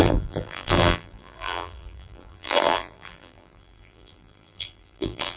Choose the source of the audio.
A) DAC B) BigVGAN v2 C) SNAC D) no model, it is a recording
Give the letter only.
B